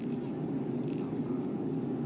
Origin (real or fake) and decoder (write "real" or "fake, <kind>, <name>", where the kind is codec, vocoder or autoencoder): real